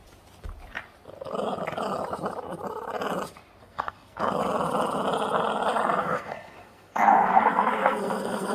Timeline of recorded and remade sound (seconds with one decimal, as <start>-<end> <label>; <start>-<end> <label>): 0.0-3.6 recorded; 3.6-4.4 remade; 4.4-6.0 recorded; 6.0-8.5 remade

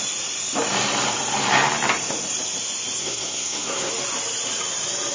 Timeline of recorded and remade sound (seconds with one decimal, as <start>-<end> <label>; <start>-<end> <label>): 0.0-3.0 recorded; 3.0-3.9 remade; 3.9-5.1 recorded

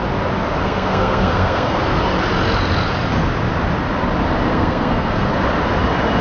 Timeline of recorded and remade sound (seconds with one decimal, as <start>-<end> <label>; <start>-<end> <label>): 0.0-0.6 recorded; 0.6-1.8 remade; 1.8-4.5 recorded; 4.5-5.3 remade; 5.3-6.2 recorded

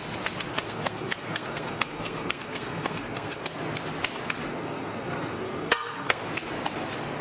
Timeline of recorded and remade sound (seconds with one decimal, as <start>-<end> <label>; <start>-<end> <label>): 0.0-0.5 recorded; 0.5-3.4 remade; 3.4-4.5 recorded; 4.5-6.2 remade; 6.2-7.2 recorded

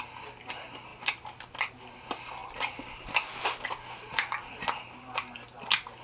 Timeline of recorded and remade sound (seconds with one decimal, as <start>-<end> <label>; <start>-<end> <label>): 0.0-6.0 recorded

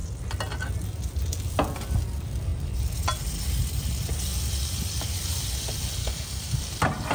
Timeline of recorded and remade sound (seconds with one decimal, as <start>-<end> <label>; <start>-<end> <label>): 0.0-6.0 recorded; 6.0-6.6 remade; 6.6-7.1 recorded

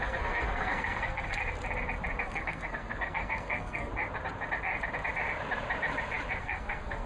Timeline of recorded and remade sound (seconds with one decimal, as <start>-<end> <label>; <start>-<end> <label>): 0.0-1.4 remade; 1.4-2.2 recorded; 2.2-3.9 remade; 3.9-6.4 recorded; 6.4-7.1 remade

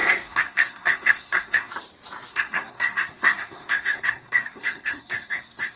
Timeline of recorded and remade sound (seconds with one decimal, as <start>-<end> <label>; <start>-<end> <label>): 0.0-1.7 remade; 1.7-2.3 recorded; 2.3-5.8 remade